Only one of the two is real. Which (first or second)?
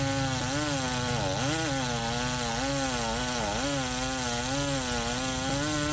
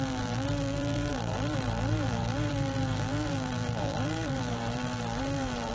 first